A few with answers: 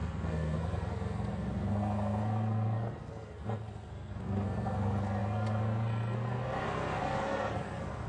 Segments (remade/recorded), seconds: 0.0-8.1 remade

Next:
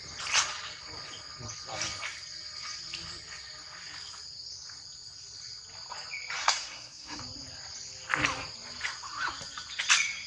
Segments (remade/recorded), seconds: 0.0-6.4 recorded; 6.4-7.2 remade; 7.2-10.3 recorded

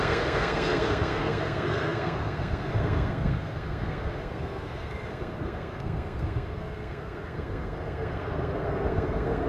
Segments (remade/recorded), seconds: 0.0-9.5 remade